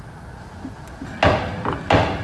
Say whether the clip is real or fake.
real